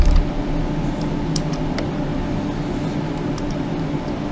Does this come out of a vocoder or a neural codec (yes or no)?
no